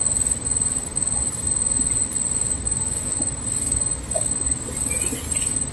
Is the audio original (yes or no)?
yes